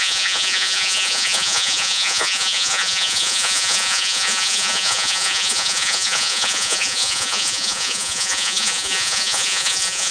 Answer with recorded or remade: remade